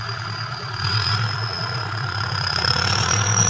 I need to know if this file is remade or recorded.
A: remade